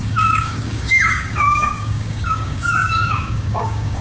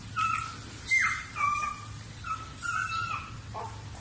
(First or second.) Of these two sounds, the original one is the second